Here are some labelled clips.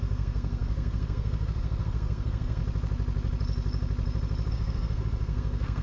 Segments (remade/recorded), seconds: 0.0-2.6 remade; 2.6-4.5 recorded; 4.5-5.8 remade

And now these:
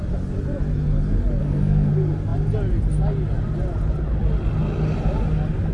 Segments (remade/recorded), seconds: 0.0-1.4 recorded; 1.4-1.9 remade; 1.9-5.7 recorded

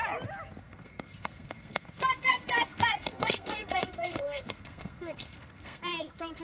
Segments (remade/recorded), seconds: 0.0-0.6 recorded; 0.6-6.4 remade

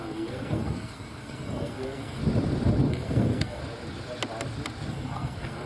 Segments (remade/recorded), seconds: 0.0-2.2 remade; 2.2-2.9 recorded; 2.9-3.6 remade; 3.6-4.9 recorded; 4.9-5.7 remade

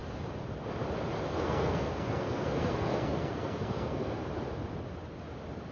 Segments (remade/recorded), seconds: 0.0-1.3 recorded; 1.3-4.2 remade; 4.2-5.7 recorded

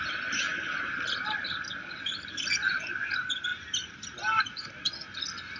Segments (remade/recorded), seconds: 0.0-5.6 recorded

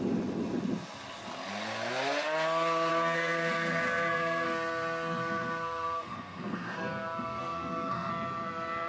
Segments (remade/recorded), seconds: 0.0-2.9 recorded; 2.9-8.1 remade; 8.1-8.9 recorded